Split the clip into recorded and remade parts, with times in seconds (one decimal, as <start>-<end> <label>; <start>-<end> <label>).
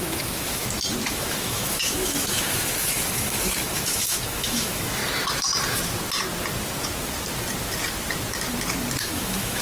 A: 0.0-0.6 remade; 0.6-1.1 recorded; 1.1-5.0 remade; 5.0-9.0 recorded; 9.0-9.6 remade